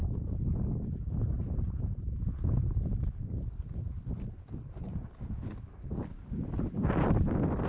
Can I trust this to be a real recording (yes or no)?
yes